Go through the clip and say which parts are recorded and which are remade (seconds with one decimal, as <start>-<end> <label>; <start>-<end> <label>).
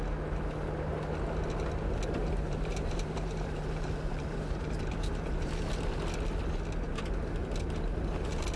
0.0-2.2 recorded; 2.2-5.5 remade; 5.5-8.6 recorded